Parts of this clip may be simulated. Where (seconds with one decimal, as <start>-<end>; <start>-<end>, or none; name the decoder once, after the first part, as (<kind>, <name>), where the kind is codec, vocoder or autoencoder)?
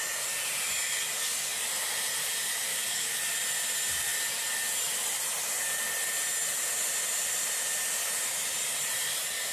2.7-3.2 (codec, DAC)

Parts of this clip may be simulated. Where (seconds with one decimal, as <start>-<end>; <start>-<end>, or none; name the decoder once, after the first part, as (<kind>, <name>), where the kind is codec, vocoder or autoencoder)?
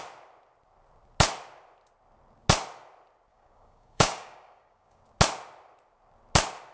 3.3-5.0 (codec, DAC)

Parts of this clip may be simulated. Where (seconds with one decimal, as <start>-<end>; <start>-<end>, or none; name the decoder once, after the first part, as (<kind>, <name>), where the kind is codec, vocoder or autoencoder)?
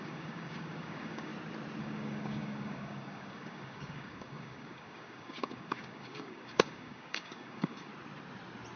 0.0-1.3 (codec, DAC); 1.8-7.9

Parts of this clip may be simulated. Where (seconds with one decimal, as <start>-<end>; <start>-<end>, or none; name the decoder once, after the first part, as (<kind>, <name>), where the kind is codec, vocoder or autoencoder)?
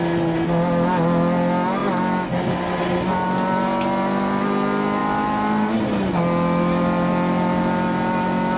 none